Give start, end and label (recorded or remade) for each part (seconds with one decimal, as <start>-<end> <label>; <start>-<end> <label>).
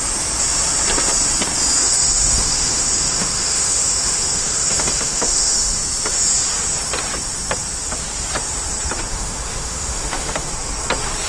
0.0-1.8 recorded; 1.8-5.8 remade; 5.8-9.1 recorded; 9.1-10.5 remade; 10.5-11.3 recorded